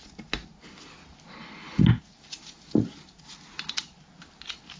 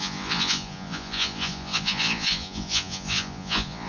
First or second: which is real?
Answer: first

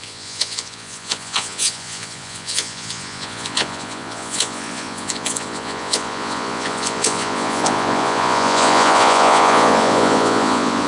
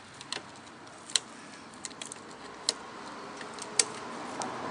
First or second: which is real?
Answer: second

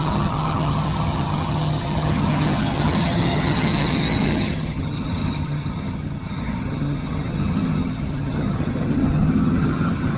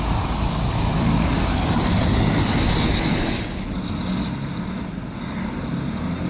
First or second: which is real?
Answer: second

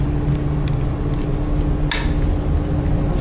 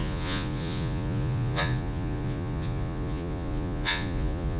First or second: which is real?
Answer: first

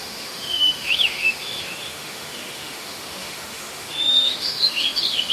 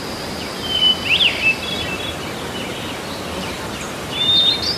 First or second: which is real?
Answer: second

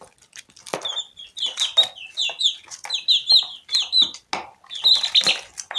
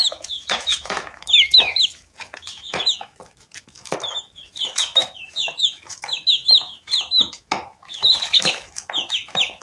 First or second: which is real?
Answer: first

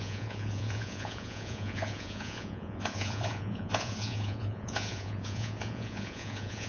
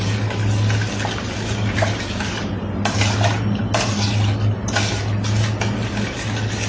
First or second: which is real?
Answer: second